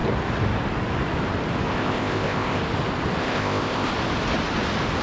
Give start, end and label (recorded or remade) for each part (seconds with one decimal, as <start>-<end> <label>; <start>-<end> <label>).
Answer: 0.0-1.7 recorded; 1.7-2.6 remade; 2.6-3.2 recorded; 3.2-3.9 remade; 3.9-5.0 recorded